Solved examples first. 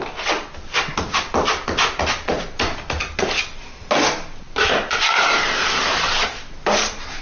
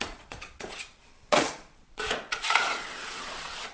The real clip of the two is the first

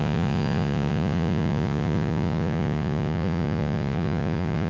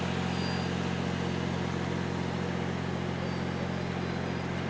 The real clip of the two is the second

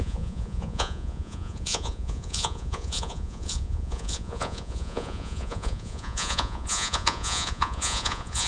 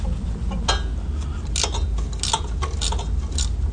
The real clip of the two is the second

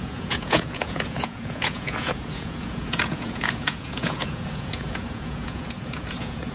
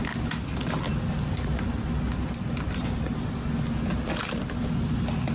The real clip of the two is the second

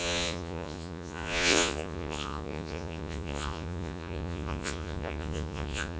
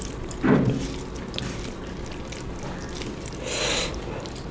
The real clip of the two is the second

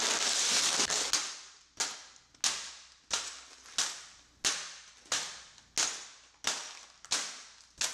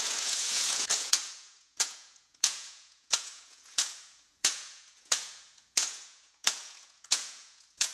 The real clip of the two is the first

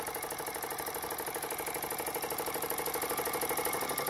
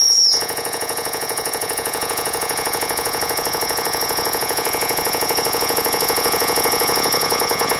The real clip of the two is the first